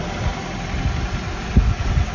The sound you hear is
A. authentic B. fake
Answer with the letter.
B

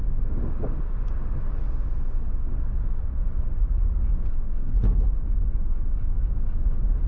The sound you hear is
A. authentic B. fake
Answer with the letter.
A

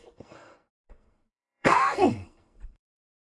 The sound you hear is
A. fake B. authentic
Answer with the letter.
A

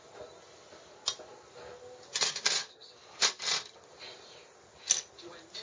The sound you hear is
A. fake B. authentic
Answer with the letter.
B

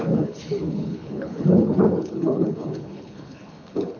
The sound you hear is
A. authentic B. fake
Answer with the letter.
B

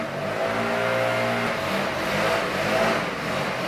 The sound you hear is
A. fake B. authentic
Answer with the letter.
B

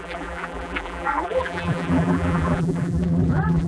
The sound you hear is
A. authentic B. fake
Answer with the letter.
B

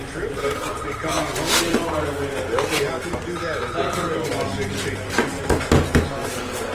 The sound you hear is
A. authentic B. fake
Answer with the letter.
A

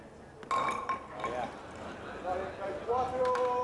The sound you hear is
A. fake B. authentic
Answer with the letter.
B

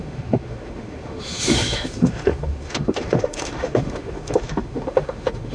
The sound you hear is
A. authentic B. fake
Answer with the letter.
B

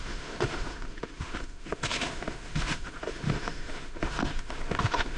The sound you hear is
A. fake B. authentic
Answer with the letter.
A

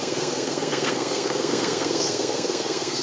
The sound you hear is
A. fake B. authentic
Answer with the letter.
A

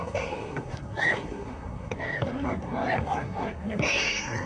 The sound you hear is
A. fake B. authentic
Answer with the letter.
A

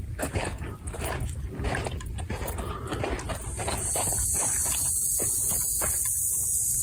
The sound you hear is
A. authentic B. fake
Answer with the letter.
A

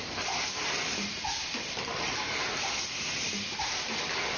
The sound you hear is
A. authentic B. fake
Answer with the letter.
A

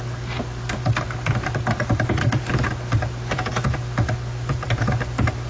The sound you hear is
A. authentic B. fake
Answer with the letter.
A